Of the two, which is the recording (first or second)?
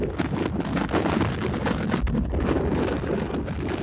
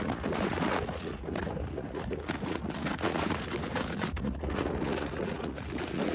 first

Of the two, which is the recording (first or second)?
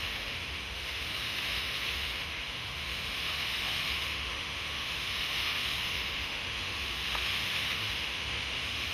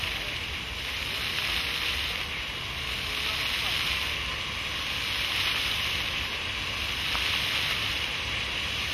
second